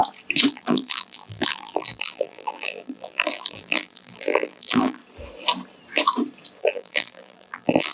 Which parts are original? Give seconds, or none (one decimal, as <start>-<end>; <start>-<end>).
0.0-0.5; 5.0-6.6